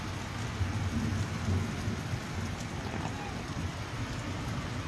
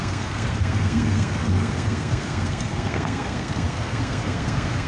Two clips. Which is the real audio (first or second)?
first